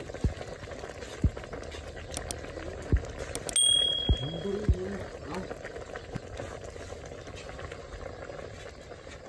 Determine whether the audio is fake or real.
real